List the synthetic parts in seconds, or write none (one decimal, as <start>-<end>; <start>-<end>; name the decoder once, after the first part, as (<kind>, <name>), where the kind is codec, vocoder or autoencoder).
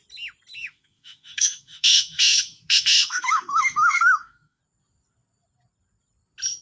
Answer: 0.6-4.6 (autoencoder, DAC-VAE)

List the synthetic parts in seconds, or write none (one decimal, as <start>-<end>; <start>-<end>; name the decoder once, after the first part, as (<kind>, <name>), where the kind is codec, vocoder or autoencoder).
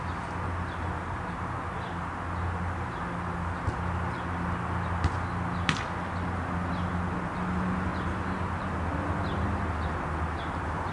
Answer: none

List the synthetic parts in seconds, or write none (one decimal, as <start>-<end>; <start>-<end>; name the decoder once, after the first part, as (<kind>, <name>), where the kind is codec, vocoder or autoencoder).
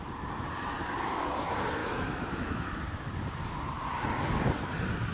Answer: 1.8-2.8 (autoencoder, DAC-VAE)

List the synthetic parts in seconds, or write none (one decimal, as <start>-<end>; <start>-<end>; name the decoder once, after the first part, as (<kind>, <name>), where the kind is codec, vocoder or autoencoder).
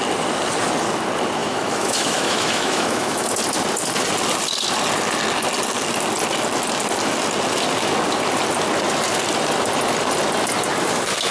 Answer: 1.4-3.4 (autoencoder, DAC-VAE)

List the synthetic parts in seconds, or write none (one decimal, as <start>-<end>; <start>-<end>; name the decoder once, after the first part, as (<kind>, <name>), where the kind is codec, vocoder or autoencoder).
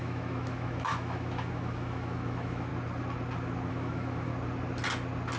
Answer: 0.0-2.7 (autoencoder, DAC-VAE); 3.7-4.3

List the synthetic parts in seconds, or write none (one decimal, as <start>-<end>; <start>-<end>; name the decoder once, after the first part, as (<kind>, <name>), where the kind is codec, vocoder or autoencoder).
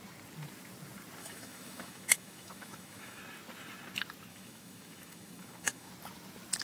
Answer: 1.2-3.2 (autoencoder, DAC-VAE); 4.3-5.9